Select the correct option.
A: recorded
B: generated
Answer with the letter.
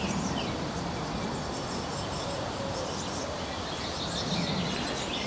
A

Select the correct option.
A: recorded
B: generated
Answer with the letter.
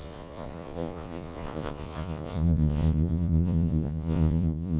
B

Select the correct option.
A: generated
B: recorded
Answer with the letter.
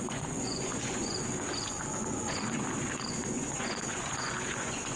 A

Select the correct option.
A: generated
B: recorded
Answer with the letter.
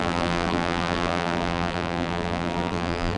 A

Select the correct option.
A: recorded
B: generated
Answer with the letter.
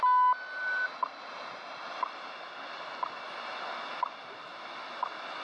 A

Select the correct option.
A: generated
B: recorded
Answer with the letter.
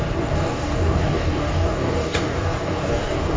A